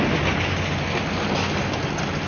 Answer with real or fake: real